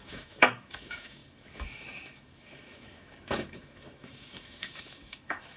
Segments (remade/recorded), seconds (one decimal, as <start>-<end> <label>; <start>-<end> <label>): 0.0-5.6 remade